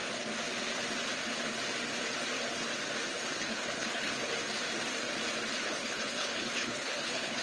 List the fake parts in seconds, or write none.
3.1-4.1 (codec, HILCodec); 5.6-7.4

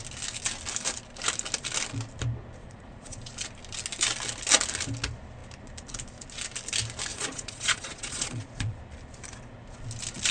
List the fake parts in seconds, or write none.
2.6-3.2 (vocoder, Vocos); 7.1-8.8

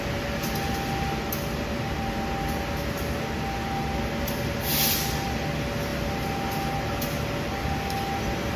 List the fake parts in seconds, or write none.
none

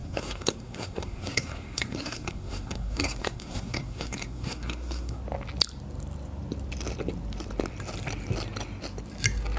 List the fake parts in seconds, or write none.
0.0-5.2 (codec, SNAC)

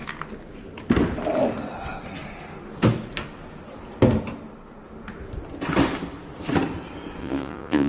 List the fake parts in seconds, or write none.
7.2-7.9 (vocoder, Vocos)

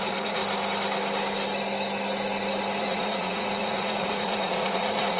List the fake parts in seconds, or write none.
0.0-0.4 (vocoder, Vocos); 2.8-5.2

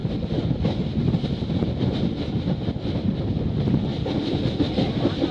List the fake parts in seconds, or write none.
none